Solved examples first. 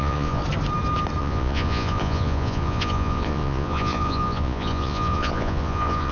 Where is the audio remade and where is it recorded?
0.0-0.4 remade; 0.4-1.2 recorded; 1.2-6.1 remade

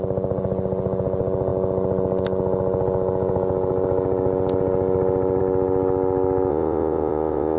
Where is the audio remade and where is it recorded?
0.0-6.5 recorded; 6.5-7.6 remade